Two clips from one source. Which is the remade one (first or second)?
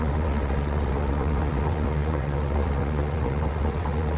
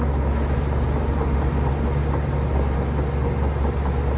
first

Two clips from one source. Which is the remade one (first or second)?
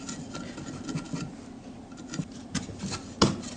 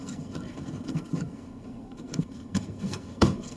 second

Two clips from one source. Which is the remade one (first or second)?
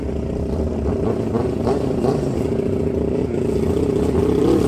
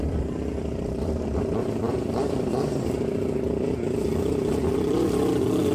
second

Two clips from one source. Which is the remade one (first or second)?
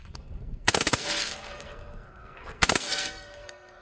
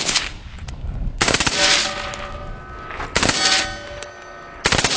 first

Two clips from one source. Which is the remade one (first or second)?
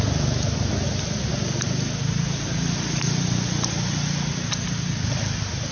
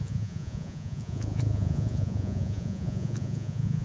second